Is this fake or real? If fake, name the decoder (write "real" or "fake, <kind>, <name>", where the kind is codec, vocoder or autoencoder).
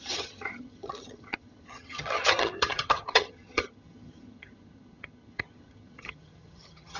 fake, vocoder, HiFi-GAN